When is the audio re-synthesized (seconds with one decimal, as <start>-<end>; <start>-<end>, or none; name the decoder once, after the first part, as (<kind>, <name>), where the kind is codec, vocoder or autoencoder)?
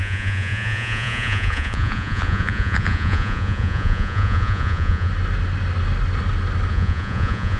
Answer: 0.0-5.1 (vocoder, Vocos); 6.7-7.6